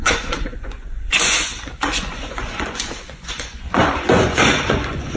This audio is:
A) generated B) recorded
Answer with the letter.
A